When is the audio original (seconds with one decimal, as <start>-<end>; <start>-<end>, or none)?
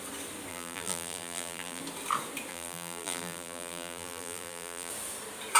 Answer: 0.0-0.5; 1.8-2.5; 4.9-5.6